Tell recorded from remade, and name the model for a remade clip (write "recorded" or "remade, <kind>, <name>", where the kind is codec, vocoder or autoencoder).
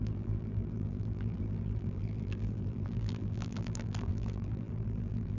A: remade, vocoder, BigVGAN v2